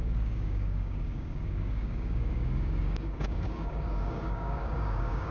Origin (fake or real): fake